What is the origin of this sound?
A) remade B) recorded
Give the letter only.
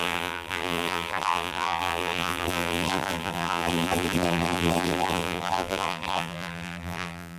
A